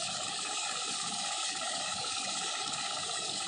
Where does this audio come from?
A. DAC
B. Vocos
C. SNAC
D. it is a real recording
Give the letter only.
A